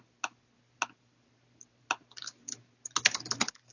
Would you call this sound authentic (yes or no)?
yes